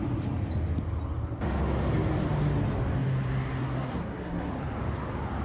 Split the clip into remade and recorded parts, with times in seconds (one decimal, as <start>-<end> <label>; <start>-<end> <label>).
0.0-3.6 recorded; 3.6-4.5 remade; 4.5-5.4 recorded